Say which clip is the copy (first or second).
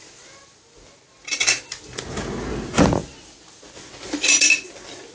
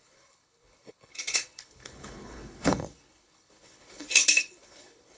second